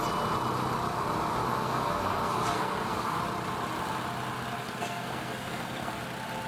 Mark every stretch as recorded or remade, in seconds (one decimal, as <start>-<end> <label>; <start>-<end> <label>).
0.0-1.4 recorded; 1.4-3.2 remade; 3.2-4.6 recorded; 4.6-6.0 remade; 6.0-6.5 recorded